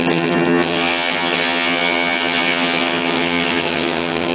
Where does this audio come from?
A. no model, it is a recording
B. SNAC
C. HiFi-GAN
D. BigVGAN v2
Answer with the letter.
C